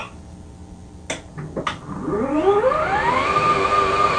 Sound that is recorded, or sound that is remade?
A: recorded